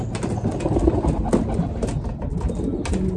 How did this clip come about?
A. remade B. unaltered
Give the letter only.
B